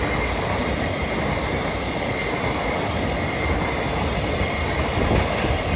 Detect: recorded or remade recorded